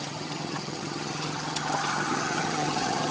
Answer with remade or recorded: remade